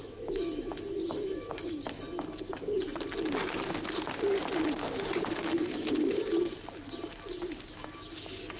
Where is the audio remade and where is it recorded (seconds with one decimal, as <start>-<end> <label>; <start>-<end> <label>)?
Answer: 0.0-1.8 remade; 1.8-5.4 recorded; 5.4-6.2 remade; 6.2-8.6 recorded